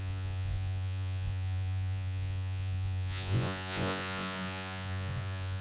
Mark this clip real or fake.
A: fake